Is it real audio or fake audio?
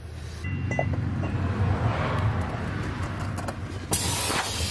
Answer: real